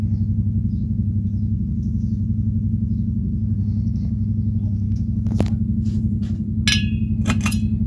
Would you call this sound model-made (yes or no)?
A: no